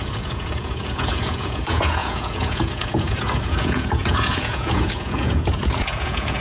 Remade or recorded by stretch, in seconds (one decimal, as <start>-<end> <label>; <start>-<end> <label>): 0.0-6.4 remade